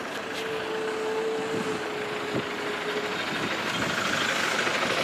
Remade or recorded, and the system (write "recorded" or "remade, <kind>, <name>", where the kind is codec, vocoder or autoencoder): recorded